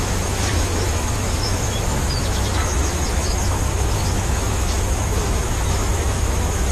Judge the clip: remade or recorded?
remade